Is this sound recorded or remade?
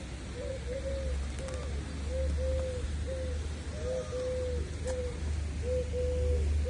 recorded